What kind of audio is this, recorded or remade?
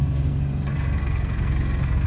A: remade